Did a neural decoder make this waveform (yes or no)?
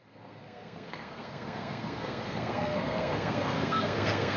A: yes